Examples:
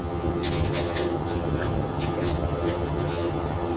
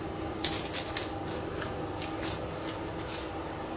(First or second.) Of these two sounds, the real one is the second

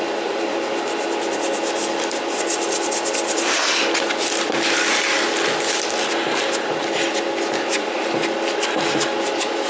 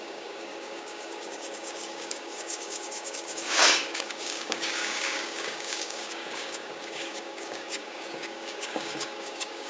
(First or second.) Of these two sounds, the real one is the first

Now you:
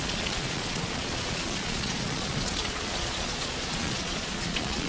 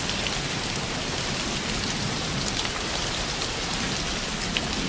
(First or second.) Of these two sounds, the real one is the second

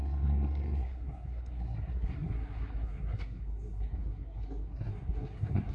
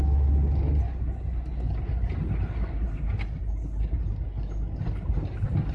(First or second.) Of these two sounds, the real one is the second